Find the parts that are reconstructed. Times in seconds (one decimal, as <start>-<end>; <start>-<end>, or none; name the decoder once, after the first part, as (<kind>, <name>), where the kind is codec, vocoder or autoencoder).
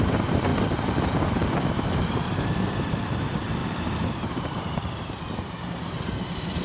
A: 0.0-0.5 (vocoder, BigVGAN v2); 1.8-6.6